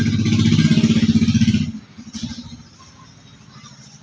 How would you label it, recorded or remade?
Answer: recorded